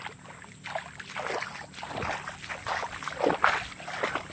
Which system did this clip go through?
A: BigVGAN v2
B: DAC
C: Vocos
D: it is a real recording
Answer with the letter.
D